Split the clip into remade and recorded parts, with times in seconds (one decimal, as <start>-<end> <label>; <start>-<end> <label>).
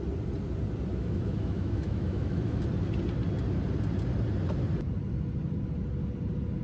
0.0-0.9 recorded; 0.9-2.6 remade; 2.6-6.6 recorded